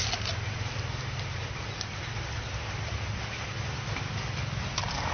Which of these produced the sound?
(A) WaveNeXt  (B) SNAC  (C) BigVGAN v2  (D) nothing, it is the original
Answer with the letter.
D